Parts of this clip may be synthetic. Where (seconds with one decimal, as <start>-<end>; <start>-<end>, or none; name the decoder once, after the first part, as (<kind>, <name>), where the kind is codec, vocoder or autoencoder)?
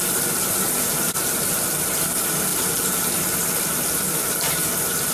none